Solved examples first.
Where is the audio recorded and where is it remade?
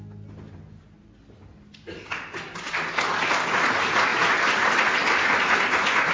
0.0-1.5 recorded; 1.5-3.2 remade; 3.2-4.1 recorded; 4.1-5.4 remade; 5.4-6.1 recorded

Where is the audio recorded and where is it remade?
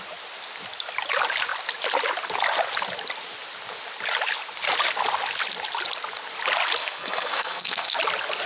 0.0-6.8 recorded; 6.8-8.0 remade; 8.0-8.5 recorded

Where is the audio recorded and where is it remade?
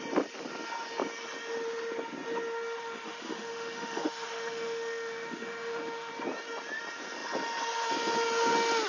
0.0-2.8 recorded; 2.8-6.1 remade; 6.1-8.9 recorded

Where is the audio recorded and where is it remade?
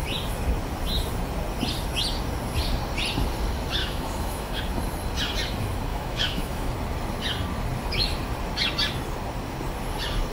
0.0-3.8 recorded; 3.8-4.6 remade; 4.6-5.9 recorded; 5.9-6.7 remade; 6.7-10.3 recorded